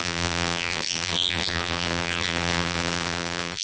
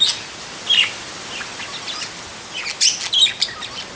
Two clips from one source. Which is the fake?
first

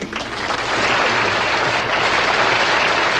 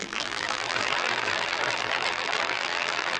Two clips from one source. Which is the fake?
second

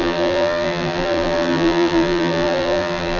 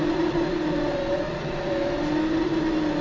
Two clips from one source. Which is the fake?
first